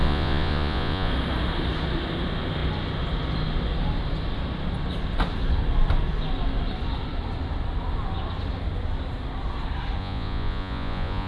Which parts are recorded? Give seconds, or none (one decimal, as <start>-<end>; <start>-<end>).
1.1-10.0